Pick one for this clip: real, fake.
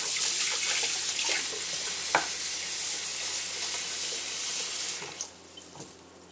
real